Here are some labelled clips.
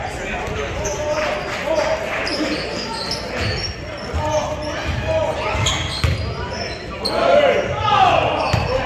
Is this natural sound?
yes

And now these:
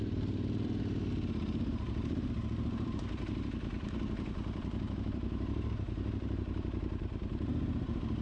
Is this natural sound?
no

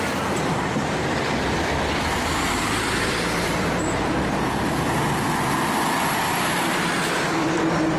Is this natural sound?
no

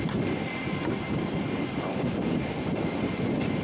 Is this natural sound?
no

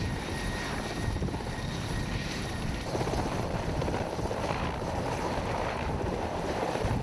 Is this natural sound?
no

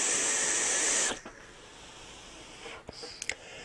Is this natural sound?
yes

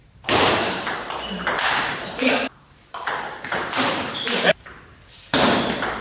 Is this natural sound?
no